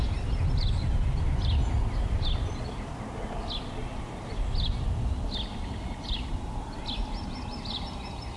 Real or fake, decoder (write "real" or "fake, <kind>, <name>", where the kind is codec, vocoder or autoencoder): real